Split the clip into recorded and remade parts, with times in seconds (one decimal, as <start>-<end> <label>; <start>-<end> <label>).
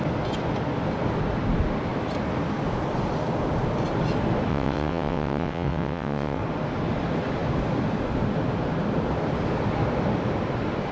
0.0-4.5 recorded; 4.5-6.4 remade; 6.4-10.9 recorded